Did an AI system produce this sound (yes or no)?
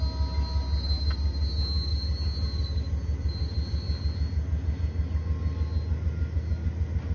no